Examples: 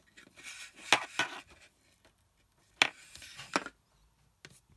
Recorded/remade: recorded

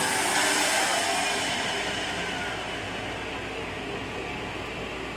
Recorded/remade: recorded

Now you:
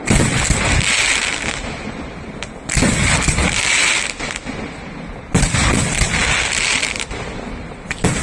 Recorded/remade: recorded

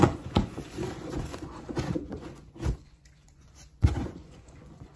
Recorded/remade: remade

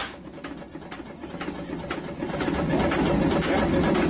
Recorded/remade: recorded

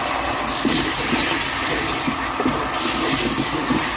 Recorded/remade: recorded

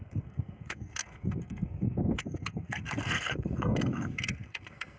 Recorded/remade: remade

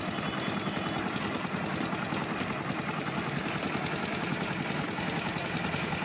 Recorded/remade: recorded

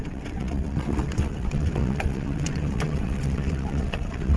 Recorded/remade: remade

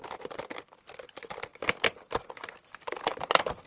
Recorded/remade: recorded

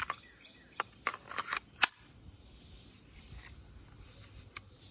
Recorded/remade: remade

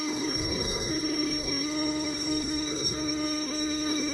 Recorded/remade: remade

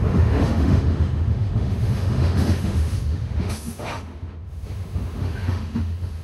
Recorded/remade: remade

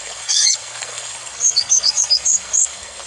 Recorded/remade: remade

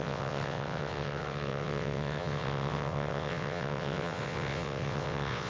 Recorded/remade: remade